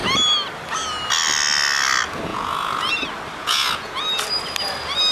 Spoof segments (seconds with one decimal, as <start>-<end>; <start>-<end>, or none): 2.3-2.9; 3.4-4.0